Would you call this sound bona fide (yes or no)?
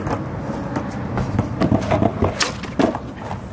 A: yes